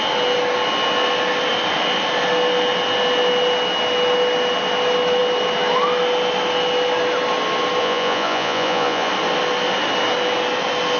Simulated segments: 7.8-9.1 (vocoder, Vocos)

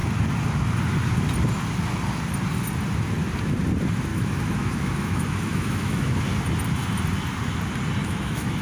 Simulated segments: 4.1-6.2 (autoencoder, DAC-VAE); 8.0-8.6

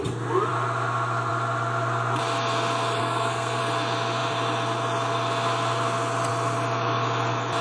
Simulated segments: 3.0-3.6 (codec, SNAC)

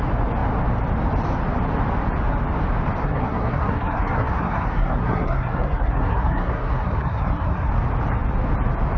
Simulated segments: 3.0-7.7 (codec, SNAC)

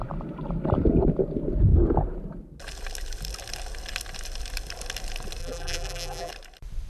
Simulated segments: 5.4-6.3 (vocoder, BigVGAN v2)

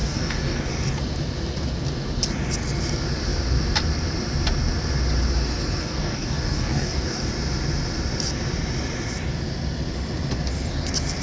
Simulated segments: 0.0-0.7 (codec, DAC); 5.8-7.3